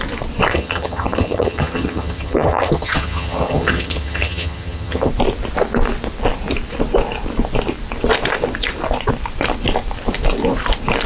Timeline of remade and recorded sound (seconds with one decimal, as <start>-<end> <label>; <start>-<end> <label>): 0.0-0.5 recorded; 0.5-5.1 remade; 5.1-11.1 recorded